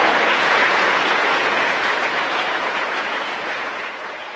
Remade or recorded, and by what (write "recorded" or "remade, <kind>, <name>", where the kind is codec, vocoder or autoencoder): remade, vocoder, Vocos